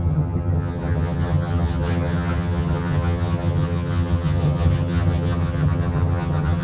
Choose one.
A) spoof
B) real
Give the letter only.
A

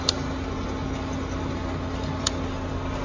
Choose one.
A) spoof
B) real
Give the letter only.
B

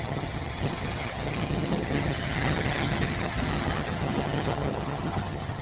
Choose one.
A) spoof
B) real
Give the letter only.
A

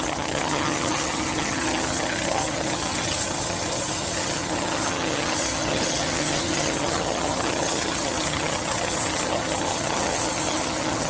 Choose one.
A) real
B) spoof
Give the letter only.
B